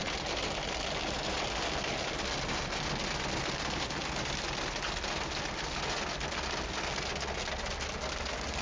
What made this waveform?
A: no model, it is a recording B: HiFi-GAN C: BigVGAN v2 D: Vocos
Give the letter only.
A